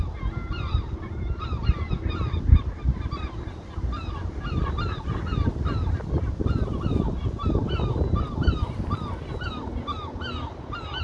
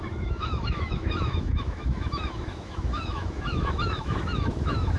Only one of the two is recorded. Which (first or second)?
first